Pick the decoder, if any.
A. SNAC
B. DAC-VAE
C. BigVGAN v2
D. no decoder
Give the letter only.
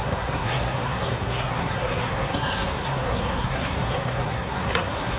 A